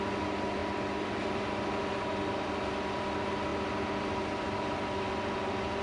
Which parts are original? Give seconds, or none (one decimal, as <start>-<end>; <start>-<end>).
0.0-5.8